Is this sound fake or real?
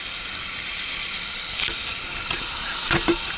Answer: real